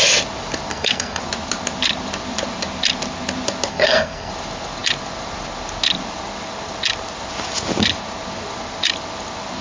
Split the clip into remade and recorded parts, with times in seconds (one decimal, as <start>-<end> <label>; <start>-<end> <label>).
0.0-0.7 recorded; 0.7-1.2 remade; 1.2-3.7 recorded; 3.7-4.3 remade; 4.3-9.6 recorded